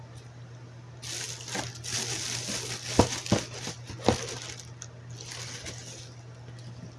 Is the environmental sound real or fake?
real